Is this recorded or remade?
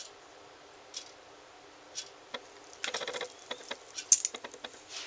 recorded